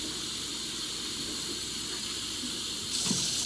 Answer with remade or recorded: remade